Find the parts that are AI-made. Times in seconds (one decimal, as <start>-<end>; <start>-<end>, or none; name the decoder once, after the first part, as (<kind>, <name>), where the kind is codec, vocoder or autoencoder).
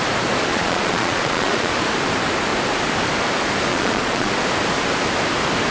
0.5-1.7 (vocoder, Vocos); 3.7-4.3